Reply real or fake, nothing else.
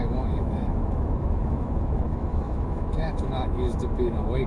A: fake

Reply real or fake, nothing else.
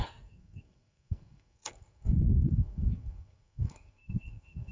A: fake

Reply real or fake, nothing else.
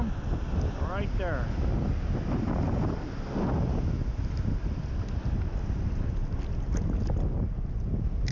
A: real